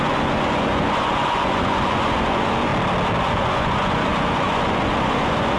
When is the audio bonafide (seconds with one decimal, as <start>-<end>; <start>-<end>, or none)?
2.7-3.2